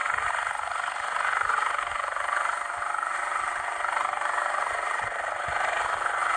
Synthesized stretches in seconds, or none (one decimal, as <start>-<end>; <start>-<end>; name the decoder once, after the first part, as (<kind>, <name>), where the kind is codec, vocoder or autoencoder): 1.9-5.4 (vocoder, BigVGAN v2)